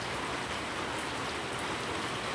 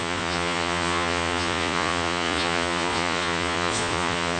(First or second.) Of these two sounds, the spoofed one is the second